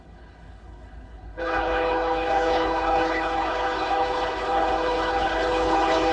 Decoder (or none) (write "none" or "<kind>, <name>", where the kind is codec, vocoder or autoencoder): codec, HILCodec